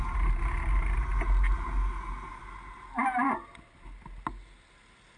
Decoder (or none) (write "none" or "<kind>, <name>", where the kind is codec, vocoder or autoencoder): none